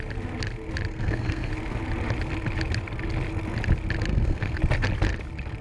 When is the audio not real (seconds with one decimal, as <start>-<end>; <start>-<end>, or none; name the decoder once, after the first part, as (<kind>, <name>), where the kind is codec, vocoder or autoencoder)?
0.9-1.5 (codec, SNAC); 4.1-4.6